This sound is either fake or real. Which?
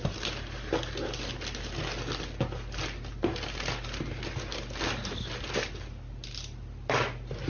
real